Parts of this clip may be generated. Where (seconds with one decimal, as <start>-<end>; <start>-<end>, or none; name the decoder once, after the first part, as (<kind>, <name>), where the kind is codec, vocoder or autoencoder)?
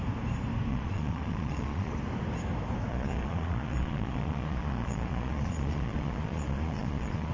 0.7-1.9 (vocoder, Vocos); 2.9-7.3